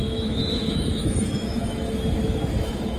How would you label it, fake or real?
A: fake